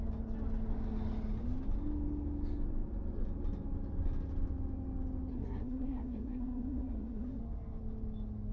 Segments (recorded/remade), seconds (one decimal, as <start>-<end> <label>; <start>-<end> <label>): 0.0-5.3 recorded; 5.3-7.4 remade; 7.4-8.5 recorded